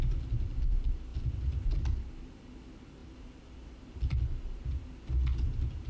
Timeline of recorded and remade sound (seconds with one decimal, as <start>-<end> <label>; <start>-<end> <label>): 0.0-3.0 recorded; 3.0-4.7 remade; 4.7-5.9 recorded